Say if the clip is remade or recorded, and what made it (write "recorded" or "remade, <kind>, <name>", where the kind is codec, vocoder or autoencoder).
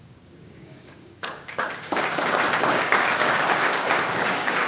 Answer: remade, codec, DAC